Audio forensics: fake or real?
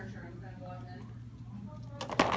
real